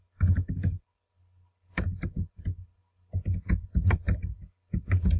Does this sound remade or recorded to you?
recorded